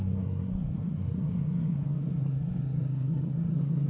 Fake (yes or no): yes